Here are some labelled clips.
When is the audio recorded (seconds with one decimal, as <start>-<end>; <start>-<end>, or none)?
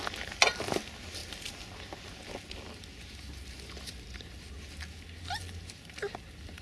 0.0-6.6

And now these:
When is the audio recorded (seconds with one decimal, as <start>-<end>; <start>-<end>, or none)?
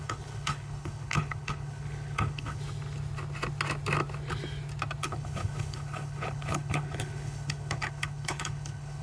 2.6-5.0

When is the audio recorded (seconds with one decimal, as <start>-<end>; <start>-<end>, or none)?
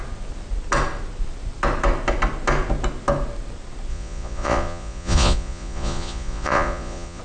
0.0-3.9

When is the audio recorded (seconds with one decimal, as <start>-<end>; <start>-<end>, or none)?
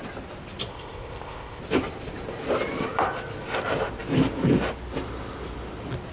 0.0-0.7; 1.6-6.1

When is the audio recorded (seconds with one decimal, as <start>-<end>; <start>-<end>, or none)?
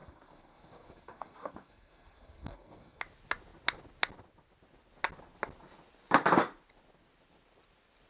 3.0-8.1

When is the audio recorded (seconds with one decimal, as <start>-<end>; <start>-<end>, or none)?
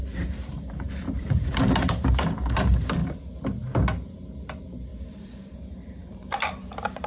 3.0-4.4